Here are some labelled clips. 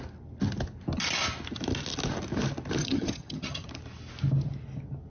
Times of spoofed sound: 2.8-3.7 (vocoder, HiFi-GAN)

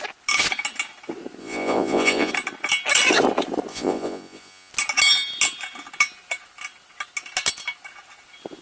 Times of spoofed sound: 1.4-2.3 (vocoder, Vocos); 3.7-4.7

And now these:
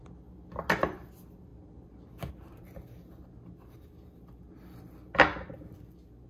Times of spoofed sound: none

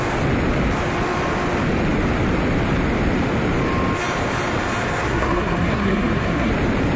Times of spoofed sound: 5.0-6.5 (codec, SNAC)

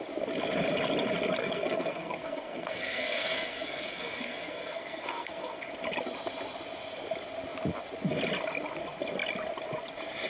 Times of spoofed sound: 1.4-5.7 (codec, SNAC)